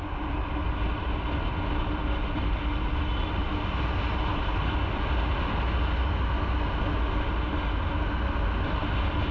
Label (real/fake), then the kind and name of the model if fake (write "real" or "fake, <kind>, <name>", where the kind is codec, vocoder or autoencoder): real